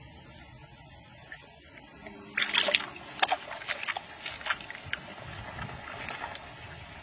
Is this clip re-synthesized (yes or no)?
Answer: no